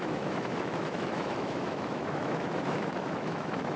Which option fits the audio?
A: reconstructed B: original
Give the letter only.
A